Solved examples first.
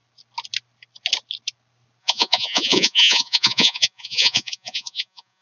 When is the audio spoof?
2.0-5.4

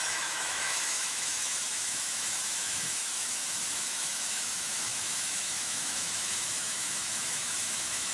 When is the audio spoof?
0.0-8.1

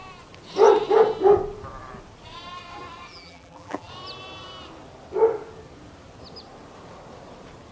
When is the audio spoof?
3.1-3.9